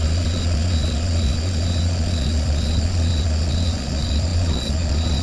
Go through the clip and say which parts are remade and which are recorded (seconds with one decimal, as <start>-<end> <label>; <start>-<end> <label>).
0.0-5.2 remade